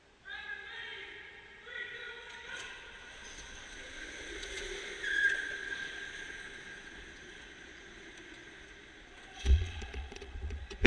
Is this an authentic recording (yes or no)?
no